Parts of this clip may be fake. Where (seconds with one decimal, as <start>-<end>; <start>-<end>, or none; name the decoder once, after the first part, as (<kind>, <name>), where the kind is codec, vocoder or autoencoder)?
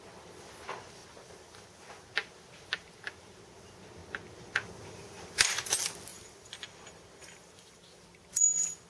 6.1-8.0 (vocoder, BigVGAN v2)